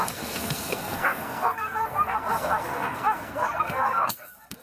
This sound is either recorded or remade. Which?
remade